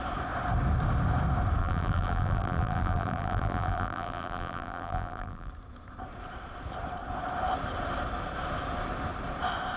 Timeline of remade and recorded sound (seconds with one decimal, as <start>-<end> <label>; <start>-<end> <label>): 0.0-1.6 recorded; 1.6-5.5 remade; 5.5-9.8 recorded